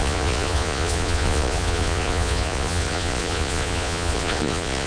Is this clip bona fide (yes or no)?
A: no